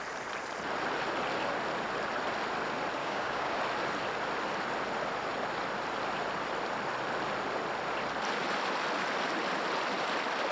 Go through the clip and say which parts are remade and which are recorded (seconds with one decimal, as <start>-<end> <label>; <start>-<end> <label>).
0.0-3.0 recorded; 3.0-3.6 remade; 3.6-10.5 recorded